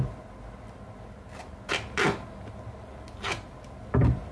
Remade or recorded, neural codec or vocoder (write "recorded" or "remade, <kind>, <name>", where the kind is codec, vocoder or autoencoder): recorded